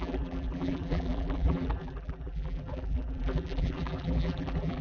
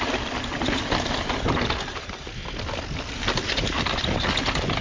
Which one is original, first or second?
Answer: second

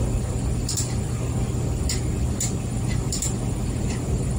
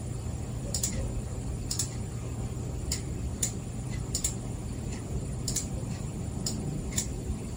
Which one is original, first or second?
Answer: first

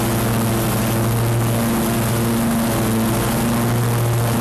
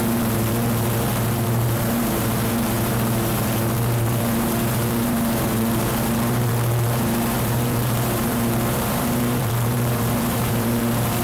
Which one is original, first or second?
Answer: first